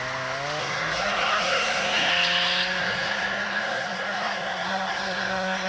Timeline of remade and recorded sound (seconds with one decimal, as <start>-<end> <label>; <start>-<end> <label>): 0.0-0.6 recorded; 0.6-2.1 remade; 2.1-2.8 recorded; 2.8-5.7 remade